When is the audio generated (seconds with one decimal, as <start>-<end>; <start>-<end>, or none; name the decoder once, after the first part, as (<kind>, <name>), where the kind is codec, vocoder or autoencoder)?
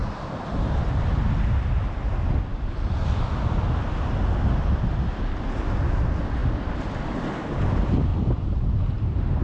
2.5-3.5 (vocoder, BigVGAN v2); 8.1-9.4